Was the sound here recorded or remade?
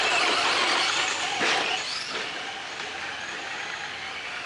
recorded